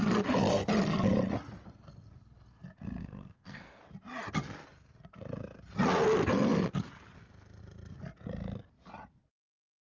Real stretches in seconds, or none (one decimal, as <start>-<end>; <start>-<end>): 0.0-3.0; 3.8-9.8